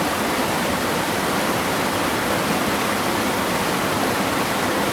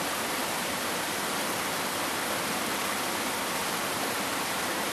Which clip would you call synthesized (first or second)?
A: first